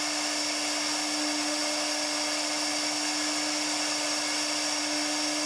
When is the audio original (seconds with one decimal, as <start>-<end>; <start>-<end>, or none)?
0.0-5.5